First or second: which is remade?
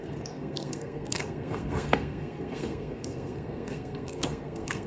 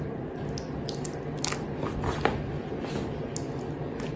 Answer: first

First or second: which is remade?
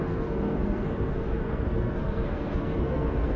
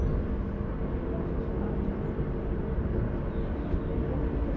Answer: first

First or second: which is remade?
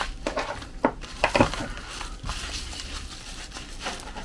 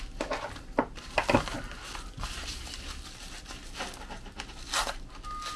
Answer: first